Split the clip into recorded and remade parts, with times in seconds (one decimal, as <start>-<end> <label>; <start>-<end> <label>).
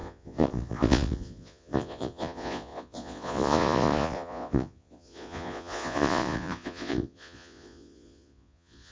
0.0-8.9 remade